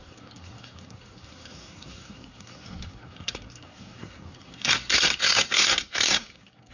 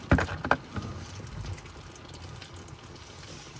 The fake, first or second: first